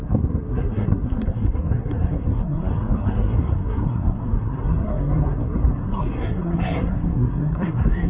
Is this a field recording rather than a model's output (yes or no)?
no